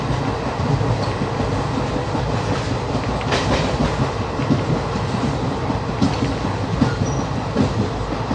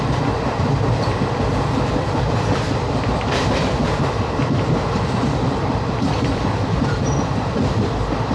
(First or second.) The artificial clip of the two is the second